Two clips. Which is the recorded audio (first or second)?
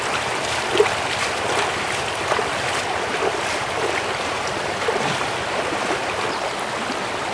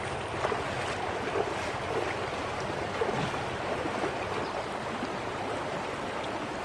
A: second